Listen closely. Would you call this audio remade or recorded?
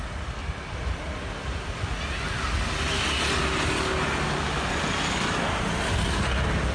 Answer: recorded